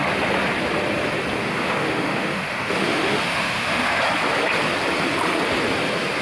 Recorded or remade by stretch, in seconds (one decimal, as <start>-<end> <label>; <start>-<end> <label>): 0.0-1.4 recorded; 1.4-4.0 remade; 4.0-6.2 recorded